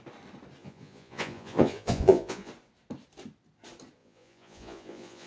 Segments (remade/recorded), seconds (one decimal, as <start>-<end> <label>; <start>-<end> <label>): 0.0-0.6 recorded; 0.6-2.5 remade; 2.5-4.0 recorded; 4.0-5.3 remade